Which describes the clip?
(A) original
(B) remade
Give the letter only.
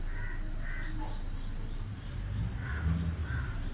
A